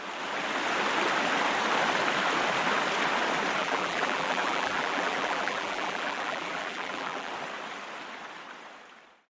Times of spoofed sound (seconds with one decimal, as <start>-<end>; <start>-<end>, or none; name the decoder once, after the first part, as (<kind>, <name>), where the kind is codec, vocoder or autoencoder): 3.6-7.3 (vocoder, BigVGAN v2)